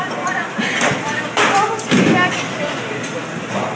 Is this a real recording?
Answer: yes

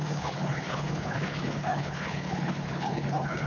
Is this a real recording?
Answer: no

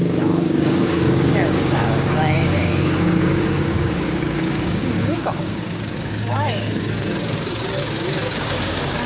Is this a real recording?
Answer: no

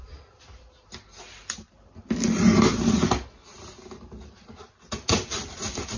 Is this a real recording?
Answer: yes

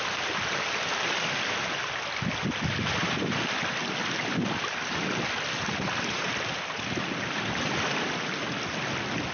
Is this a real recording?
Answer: yes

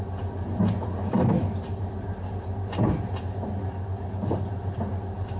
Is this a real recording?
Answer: yes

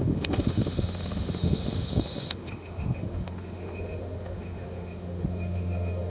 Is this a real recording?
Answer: no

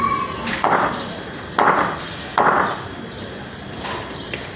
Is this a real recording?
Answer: yes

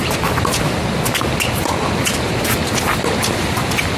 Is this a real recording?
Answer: yes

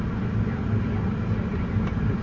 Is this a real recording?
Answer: yes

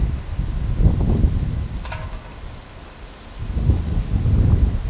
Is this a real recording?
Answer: yes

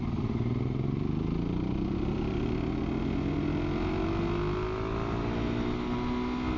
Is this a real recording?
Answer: yes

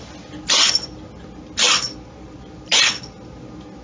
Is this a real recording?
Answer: yes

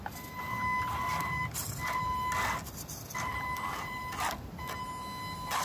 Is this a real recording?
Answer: yes